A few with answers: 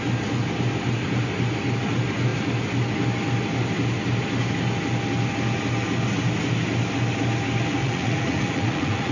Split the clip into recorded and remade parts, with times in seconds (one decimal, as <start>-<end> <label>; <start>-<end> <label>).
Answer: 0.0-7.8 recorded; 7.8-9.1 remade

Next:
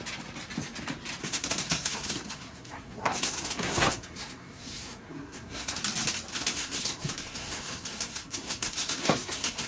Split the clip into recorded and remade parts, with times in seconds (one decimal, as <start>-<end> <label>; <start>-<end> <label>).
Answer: 0.0-1.2 recorded; 1.2-5.8 remade; 5.8-6.3 recorded; 6.3-9.7 remade

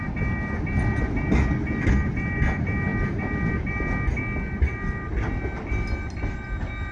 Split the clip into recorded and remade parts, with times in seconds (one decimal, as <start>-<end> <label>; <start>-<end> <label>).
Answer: 0.0-6.9 recorded